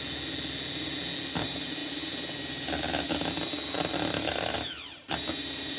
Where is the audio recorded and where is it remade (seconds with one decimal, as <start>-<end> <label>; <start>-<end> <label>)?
0.0-5.8 recorded